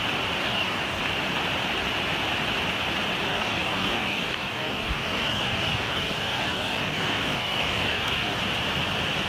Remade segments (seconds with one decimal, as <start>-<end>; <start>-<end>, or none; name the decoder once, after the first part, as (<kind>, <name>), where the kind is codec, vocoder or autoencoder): 0.4-1.0 (codec, DAC); 3.3-8.4